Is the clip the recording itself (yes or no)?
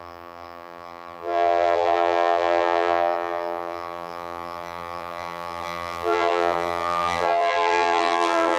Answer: no